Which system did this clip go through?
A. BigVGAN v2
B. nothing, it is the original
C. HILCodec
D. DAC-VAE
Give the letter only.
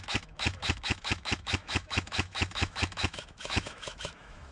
D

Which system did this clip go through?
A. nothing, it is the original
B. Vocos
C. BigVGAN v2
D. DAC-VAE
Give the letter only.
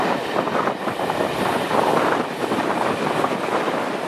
A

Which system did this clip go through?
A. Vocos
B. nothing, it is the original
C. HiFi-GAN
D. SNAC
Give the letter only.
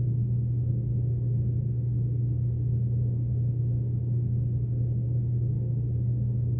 B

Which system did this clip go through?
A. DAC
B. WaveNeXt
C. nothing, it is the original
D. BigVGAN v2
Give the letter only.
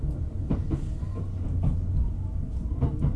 C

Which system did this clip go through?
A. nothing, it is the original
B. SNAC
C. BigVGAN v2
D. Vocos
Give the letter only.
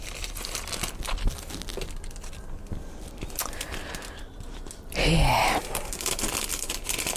A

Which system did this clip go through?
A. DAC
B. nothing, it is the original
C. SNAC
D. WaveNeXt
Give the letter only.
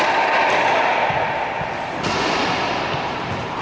B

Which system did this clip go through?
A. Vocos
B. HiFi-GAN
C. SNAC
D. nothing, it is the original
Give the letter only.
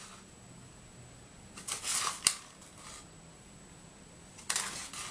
D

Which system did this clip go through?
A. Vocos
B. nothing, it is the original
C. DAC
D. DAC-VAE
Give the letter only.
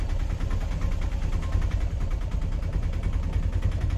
B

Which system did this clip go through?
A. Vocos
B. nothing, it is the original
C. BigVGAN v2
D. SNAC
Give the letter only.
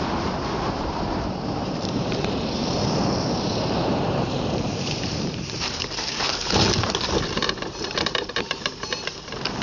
C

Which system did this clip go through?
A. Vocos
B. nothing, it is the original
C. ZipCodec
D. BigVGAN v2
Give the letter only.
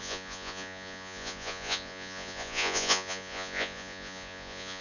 A